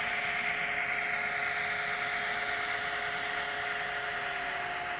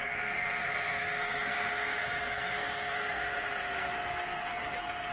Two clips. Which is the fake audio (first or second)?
second